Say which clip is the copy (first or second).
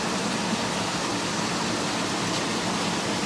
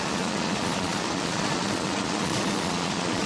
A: second